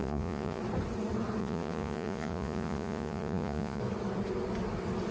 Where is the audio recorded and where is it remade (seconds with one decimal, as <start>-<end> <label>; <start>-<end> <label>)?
0.0-0.6 remade; 0.6-1.4 recorded; 1.4-3.8 remade; 3.8-5.1 recorded